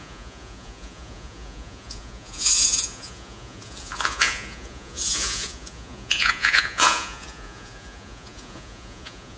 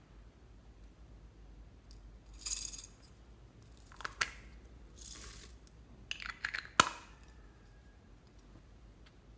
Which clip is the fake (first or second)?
first